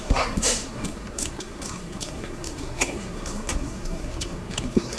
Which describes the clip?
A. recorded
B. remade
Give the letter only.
B